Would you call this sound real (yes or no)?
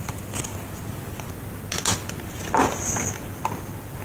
yes